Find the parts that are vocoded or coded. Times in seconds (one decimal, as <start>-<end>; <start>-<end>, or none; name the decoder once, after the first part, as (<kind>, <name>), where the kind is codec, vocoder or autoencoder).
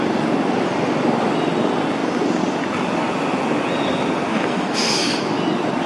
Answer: 4.3-5.2 (codec, SNAC)